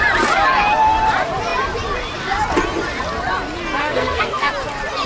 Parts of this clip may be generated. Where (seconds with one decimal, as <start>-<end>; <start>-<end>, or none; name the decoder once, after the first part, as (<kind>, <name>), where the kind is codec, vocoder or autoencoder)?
3.8-4.5 (codec, SNAC)